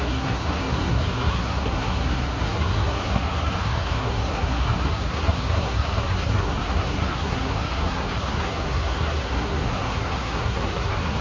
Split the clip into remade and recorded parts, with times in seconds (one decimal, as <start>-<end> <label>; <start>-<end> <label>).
0.0-11.2 remade